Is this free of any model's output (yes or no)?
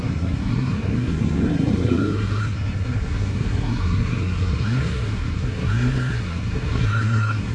no